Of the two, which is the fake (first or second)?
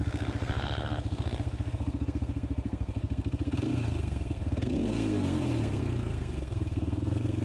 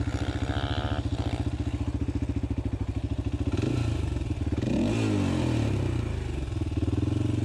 first